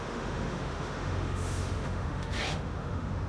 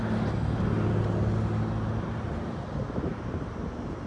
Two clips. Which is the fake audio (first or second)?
first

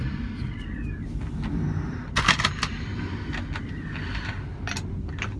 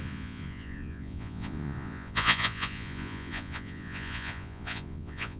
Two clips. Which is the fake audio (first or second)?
second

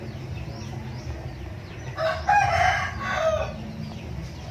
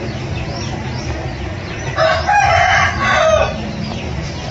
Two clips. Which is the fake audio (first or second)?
second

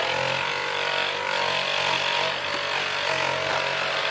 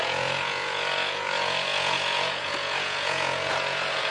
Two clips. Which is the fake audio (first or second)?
second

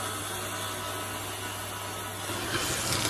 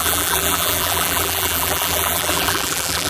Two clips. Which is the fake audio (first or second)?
second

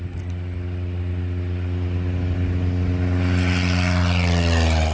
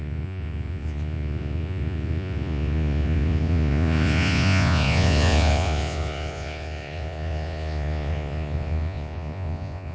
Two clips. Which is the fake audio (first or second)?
second